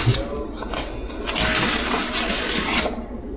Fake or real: real